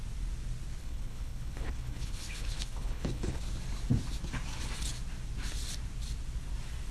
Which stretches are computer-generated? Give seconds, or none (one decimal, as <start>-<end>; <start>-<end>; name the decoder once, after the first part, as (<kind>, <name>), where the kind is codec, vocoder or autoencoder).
0.8-3.4 (codec, HILCodec)